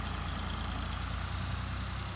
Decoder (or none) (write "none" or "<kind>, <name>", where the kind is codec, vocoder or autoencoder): none